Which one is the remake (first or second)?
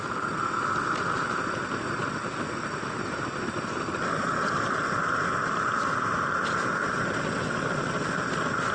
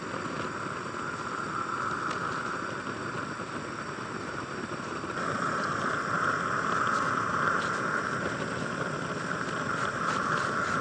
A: first